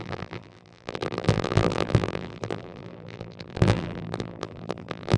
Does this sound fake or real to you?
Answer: fake